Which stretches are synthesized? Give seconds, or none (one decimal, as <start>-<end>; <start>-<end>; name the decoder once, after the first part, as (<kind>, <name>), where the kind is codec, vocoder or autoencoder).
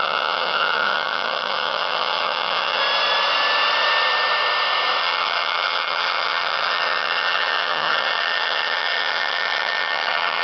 0.0-2.8 (vocoder, HiFi-GAN); 5.0-10.4